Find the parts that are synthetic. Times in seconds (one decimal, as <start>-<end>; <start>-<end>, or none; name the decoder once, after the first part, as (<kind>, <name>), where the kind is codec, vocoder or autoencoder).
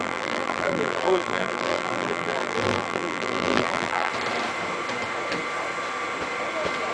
0.0-4.1 (vocoder, BigVGAN v2)